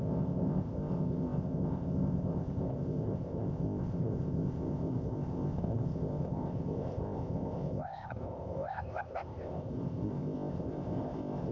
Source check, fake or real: fake